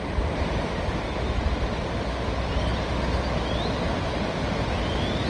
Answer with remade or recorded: recorded